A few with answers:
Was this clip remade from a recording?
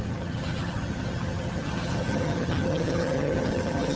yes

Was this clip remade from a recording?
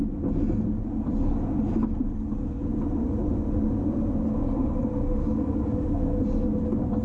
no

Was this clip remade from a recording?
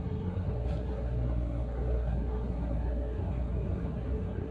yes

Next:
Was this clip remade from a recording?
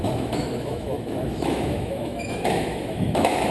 yes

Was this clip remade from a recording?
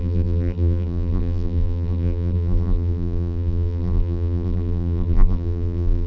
yes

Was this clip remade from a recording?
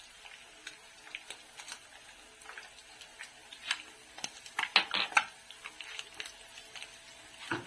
no